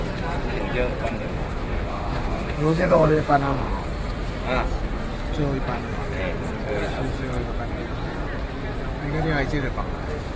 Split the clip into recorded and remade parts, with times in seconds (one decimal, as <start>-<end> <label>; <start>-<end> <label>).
0.0-1.3 recorded; 1.3-3.7 remade; 3.7-10.4 recorded

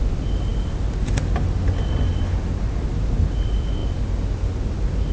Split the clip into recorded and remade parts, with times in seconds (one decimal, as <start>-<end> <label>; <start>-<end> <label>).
0.0-5.1 recorded

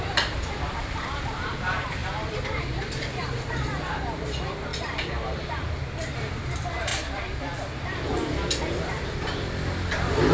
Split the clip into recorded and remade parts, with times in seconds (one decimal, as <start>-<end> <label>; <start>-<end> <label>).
0.0-2.0 remade; 2.0-2.6 recorded; 2.6-8.1 remade; 8.1-8.7 recorded; 8.7-10.3 remade

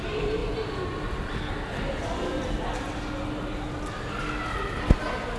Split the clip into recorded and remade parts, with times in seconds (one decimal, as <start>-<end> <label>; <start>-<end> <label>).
0.0-5.4 recorded

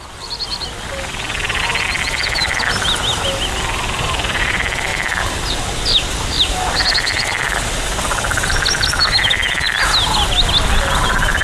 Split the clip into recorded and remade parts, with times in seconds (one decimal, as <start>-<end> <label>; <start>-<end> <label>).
0.0-11.4 recorded

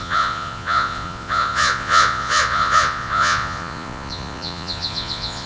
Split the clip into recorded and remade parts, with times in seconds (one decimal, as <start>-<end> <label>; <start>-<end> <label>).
0.0-5.5 remade